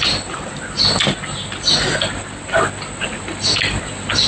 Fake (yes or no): no